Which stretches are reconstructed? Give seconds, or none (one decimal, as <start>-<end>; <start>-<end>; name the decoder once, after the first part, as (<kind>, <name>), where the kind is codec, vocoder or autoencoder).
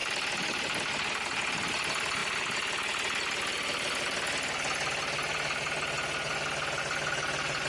none